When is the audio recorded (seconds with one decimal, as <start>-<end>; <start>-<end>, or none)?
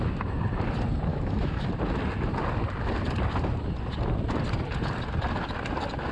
0.0-1.1; 1.7-6.1